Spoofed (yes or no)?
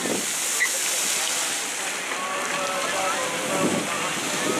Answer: no